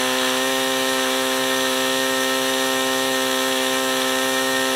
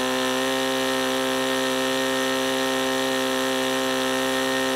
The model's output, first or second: first